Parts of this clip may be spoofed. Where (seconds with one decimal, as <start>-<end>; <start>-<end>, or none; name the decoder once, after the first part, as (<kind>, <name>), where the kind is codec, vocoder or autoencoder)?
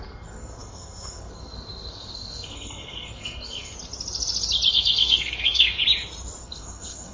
0.0-3.7 (codec, SNAC); 4.7-5.8; 6.4-7.1